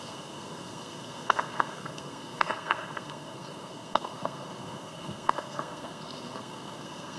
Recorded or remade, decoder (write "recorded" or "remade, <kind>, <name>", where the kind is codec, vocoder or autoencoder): remade, codec, SNAC